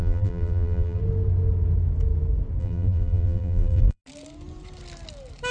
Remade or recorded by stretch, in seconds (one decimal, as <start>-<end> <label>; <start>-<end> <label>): 0.0-1.0 remade; 1.0-2.6 recorded; 2.6-4.0 remade; 4.0-5.5 recorded